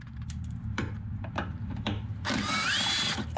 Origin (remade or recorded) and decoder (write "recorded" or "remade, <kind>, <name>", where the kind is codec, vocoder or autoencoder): remade, vocoder, BigVGAN v2